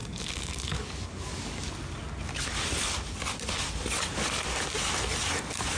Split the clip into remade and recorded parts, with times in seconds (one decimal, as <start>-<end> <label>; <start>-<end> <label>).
0.0-1.7 remade; 1.7-5.8 recorded